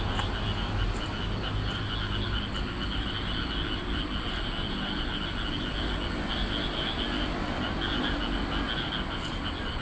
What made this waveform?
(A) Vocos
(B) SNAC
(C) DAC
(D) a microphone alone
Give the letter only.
D